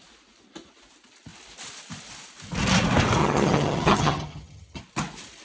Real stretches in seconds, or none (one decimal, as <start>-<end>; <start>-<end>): 0.0-3.2; 4.8-5.4